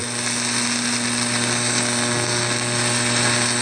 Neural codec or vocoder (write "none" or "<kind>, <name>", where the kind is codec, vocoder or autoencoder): none